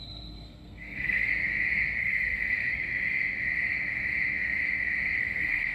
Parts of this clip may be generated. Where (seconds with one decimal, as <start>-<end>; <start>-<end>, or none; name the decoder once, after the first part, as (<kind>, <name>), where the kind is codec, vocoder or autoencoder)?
0.0-1.3 (codec, SNAC); 2.0-2.7; 5.2-5.7